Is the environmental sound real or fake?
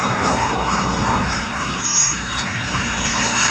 fake